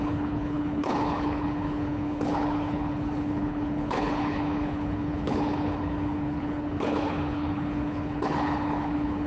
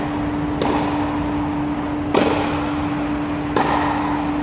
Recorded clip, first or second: second